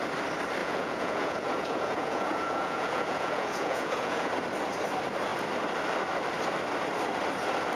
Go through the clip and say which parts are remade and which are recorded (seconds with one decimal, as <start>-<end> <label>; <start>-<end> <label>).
0.0-0.6 recorded; 0.6-4.3 remade; 4.3-7.7 recorded